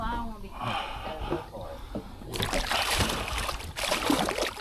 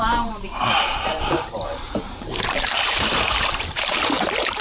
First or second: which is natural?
first